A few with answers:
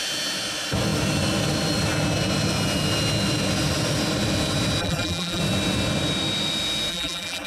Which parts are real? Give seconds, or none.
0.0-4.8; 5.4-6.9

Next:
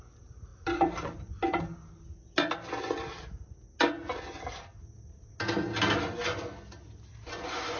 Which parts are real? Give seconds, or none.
0.0-0.5; 1.6-7.8

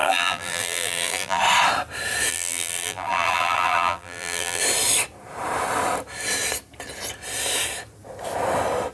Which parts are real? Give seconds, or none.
1.4-2.3; 4.6-8.9

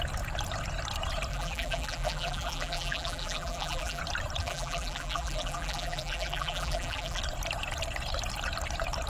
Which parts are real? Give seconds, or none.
0.0-1.3; 4.0-4.4; 7.2-9.1

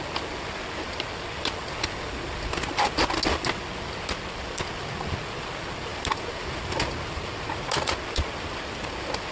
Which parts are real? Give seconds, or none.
0.0-5.9; 6.4-9.3

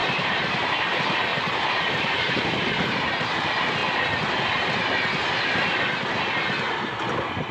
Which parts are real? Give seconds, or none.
0.8-1.3; 3.3-7.5

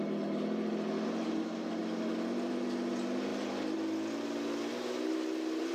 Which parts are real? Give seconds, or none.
0.0-5.7